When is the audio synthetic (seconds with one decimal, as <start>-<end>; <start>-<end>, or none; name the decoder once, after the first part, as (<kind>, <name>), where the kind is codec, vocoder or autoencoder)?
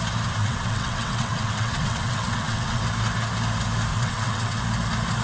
0.4-2.8 (vocoder, WaveNeXt); 3.9-4.6